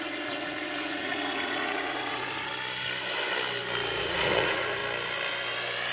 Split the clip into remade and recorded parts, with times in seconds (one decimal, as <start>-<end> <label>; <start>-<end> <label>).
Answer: 0.0-2.5 remade; 2.5-4.0 recorded; 4.0-4.8 remade; 4.8-5.9 recorded